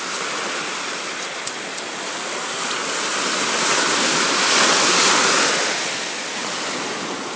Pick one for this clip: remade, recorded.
recorded